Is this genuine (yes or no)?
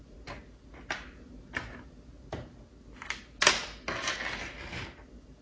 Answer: yes